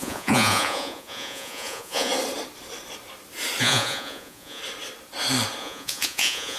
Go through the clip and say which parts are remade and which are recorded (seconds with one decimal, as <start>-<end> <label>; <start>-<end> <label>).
0.0-2.1 remade; 2.1-3.6 recorded; 3.6-4.6 remade; 4.6-5.6 recorded; 5.6-6.6 remade